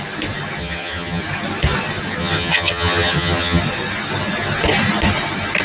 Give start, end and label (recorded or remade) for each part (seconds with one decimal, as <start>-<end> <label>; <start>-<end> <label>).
0.0-0.6 recorded; 0.6-1.2 remade; 1.2-2.2 recorded; 2.2-3.6 remade; 3.6-5.6 recorded